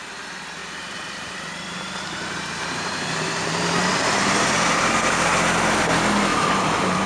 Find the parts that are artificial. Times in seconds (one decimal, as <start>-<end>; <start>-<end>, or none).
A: 0.6-4.9; 6.3-7.1